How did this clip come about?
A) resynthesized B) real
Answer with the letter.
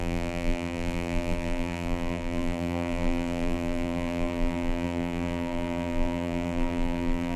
A